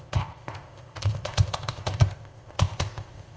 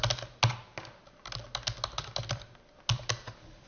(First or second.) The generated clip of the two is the first